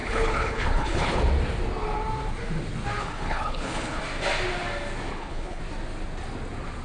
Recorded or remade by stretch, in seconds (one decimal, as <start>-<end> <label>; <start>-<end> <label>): 0.0-1.2 remade; 1.2-3.0 recorded; 3.0-4.0 remade; 4.0-5.1 recorded; 5.1-5.6 remade; 5.6-6.8 recorded